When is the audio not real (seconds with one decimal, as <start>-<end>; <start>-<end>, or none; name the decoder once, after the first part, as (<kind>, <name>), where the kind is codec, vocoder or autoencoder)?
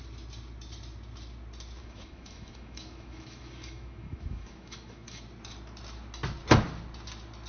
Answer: 1.8-5.2 (autoencoder, DAC-VAE)